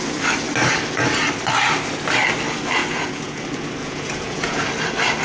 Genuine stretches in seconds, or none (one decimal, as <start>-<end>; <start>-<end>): 0.0-2.8; 3.4-3.8; 4.6-5.2